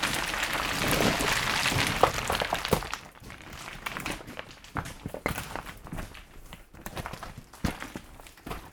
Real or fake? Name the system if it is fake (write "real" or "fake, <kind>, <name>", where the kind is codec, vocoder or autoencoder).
real